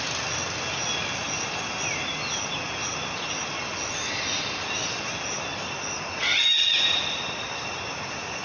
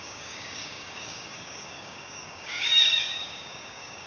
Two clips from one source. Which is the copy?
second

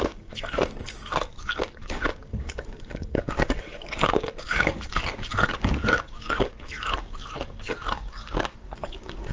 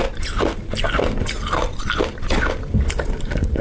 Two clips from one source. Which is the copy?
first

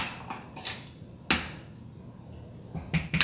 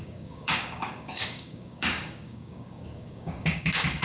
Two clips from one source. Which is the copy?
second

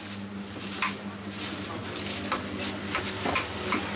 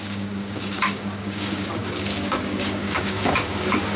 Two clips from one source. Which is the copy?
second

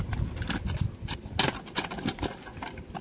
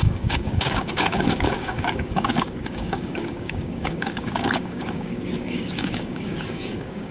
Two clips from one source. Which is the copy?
second